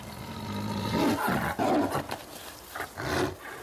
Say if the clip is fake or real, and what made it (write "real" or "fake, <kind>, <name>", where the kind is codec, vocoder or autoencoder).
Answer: real